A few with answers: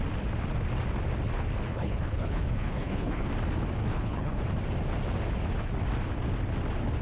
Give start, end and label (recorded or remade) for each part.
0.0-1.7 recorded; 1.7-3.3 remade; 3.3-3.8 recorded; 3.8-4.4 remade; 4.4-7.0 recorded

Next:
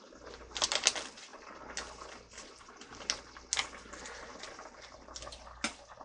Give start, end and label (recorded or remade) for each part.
0.0-6.0 recorded

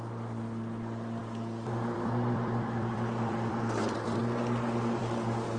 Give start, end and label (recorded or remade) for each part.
0.0-1.2 recorded; 1.2-4.2 remade; 4.2-5.6 recorded

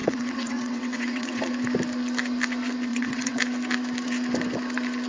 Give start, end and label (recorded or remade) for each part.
0.0-1.5 remade; 1.5-2.9 recorded; 2.9-3.4 remade; 3.4-5.1 recorded

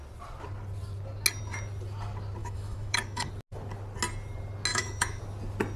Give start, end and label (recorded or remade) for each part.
0.0-2.4 recorded; 2.4-3.3 remade; 3.3-4.7 recorded; 4.7-5.2 remade; 5.2-5.8 recorded

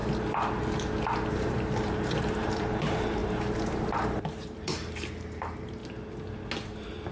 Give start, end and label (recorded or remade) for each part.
0.0-1.3 recorded; 1.3-5.8 remade; 5.8-7.1 recorded